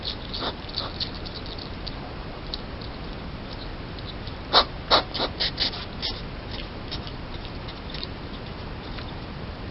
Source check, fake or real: real